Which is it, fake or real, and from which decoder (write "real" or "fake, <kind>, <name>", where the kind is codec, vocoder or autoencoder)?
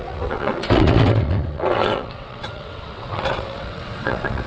fake, vocoder, WaveNeXt